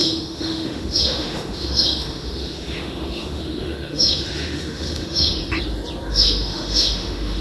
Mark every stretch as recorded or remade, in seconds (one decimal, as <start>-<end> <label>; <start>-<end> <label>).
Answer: 0.0-5.4 remade; 5.4-6.1 recorded; 6.1-7.4 remade